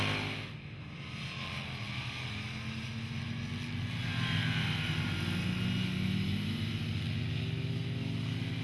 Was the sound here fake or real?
real